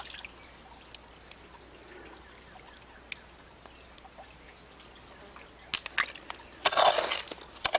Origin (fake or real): real